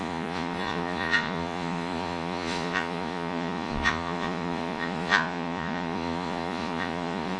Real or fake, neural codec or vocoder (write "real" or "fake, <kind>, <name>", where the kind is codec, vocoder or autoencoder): fake, vocoder, Vocos